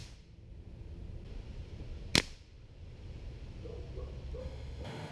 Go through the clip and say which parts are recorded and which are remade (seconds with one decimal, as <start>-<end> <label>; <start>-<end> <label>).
0.0-4.4 recorded; 4.4-5.1 remade